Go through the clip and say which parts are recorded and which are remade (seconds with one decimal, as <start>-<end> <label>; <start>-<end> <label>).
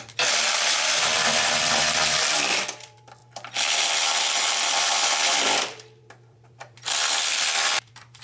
0.0-3.2 remade; 3.2-4.8 recorded; 4.8-8.2 remade